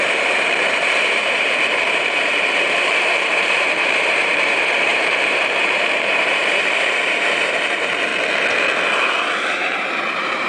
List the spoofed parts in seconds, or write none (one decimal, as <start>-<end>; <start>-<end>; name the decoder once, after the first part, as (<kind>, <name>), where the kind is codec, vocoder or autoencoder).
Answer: 0.0-8.1 (vocoder, BigVGAN v2); 9.4-10.5